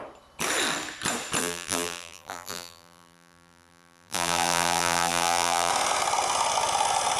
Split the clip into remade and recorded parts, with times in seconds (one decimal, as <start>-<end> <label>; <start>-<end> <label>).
0.0-1.4 recorded; 1.4-5.7 remade; 5.7-7.2 recorded